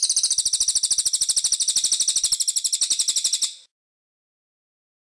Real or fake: real